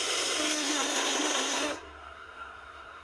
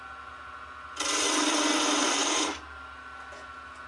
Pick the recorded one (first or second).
second